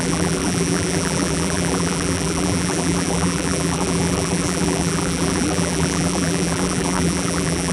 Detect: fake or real fake